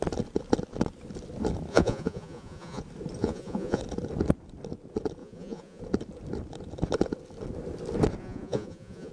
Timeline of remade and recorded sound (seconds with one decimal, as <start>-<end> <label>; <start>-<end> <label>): 0.0-1.7 recorded; 1.7-2.8 remade; 2.8-3.2 recorded; 3.2-3.8 remade; 3.8-5.2 recorded; 5.2-5.8 remade; 5.8-8.2 recorded; 8.2-9.1 remade